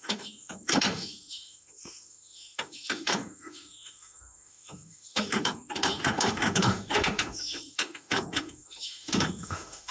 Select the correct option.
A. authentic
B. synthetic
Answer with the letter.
B